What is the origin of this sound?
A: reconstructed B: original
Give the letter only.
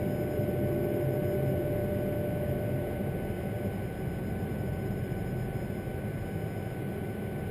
B